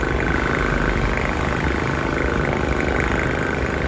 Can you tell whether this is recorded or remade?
recorded